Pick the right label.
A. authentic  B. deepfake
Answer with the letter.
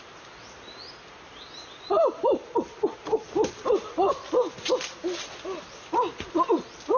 A